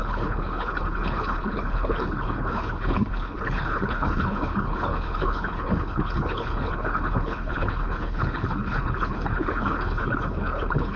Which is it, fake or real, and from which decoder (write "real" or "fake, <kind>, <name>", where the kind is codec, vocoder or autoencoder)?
fake, codec, HILCodec